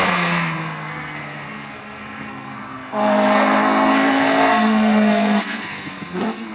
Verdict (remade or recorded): remade